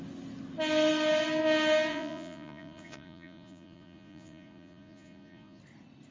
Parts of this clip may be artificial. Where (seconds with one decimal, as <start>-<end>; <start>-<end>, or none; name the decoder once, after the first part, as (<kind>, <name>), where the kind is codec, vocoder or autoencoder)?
1.9-5.6 (vocoder, Vocos)